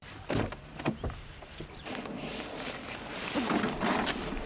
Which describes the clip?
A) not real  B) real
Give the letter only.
A